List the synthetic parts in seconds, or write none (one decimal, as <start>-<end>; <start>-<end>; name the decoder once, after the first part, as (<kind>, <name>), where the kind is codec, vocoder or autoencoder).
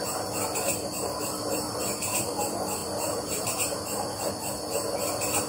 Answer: 1.4-2.4 (vocoder, BigVGAN v2); 2.8-4.3